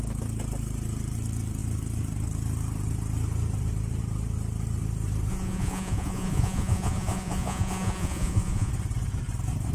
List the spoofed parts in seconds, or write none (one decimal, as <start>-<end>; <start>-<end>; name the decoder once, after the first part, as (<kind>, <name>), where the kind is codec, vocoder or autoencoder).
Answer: 5.3-8.7 (vocoder, Vocos)